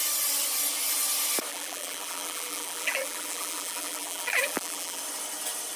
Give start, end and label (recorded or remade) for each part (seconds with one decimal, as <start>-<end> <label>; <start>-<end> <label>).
0.0-1.5 recorded; 1.5-5.0 remade; 5.0-5.8 recorded